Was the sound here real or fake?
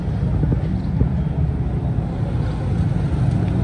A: real